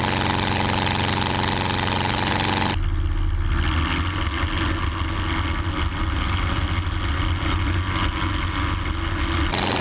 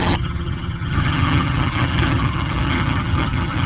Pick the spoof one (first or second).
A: second